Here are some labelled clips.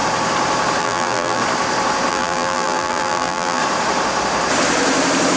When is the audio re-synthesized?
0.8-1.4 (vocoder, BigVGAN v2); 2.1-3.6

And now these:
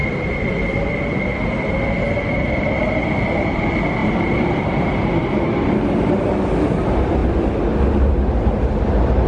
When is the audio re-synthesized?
4.0-4.6 (vocoder, BigVGAN v2)

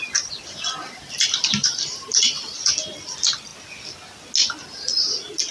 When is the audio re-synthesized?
0.0-3.5 (vocoder, BigVGAN v2)